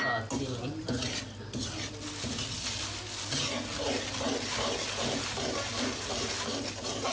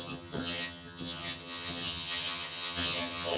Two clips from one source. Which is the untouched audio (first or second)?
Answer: first